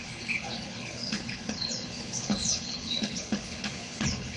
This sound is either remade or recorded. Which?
remade